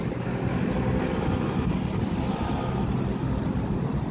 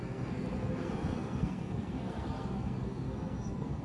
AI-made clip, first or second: second